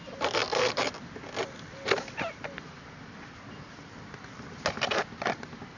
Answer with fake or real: real